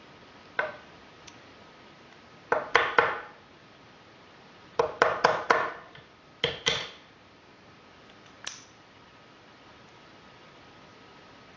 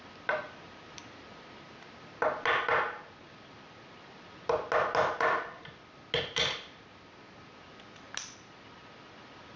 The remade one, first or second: first